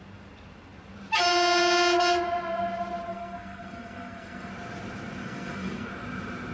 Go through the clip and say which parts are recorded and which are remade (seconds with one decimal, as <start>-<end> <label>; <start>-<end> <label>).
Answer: 0.0-3.1 recorded; 3.1-4.5 remade; 4.5-5.2 recorded; 5.2-5.9 remade; 5.9-6.5 recorded